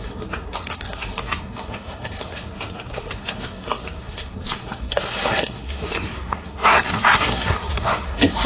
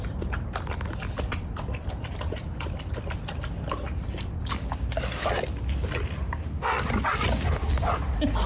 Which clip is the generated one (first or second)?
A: first